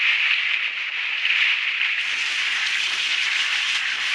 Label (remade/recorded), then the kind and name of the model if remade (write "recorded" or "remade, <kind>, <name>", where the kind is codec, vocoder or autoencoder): recorded